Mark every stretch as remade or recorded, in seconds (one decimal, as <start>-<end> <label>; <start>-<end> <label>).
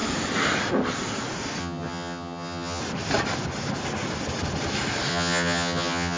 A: 0.0-1.6 recorded; 1.6-2.8 remade; 2.8-5.1 recorded; 5.1-6.2 remade